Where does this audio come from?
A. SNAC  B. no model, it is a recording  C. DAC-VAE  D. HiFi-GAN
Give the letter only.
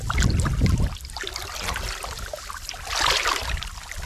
B